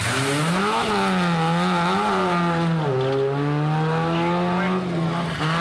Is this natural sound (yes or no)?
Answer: yes